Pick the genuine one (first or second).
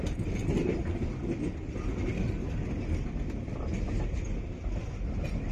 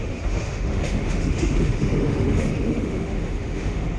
first